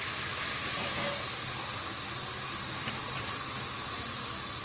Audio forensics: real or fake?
real